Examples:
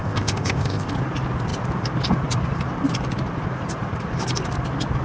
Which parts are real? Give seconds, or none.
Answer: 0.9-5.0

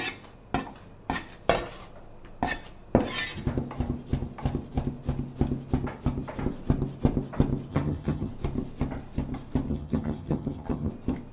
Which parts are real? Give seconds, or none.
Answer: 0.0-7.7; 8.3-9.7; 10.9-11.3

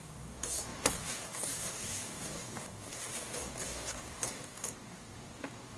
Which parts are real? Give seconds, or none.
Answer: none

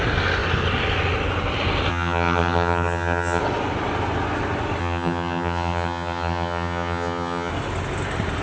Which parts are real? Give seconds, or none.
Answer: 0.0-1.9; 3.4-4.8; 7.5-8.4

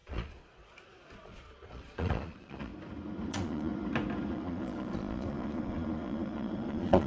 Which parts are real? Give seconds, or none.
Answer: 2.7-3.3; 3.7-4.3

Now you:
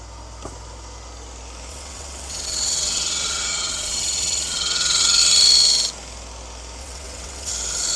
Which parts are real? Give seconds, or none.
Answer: 0.0-1.7; 5.2-6.8; 7.5-8.0